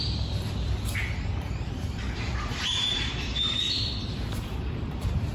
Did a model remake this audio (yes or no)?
yes